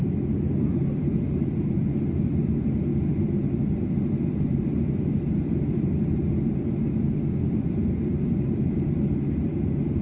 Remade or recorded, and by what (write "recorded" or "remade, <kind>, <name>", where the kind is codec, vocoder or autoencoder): remade, vocoder, BigVGAN v2